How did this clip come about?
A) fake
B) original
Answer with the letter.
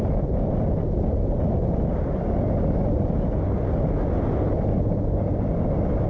B